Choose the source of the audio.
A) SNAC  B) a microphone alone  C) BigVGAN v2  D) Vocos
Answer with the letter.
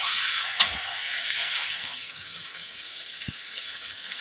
A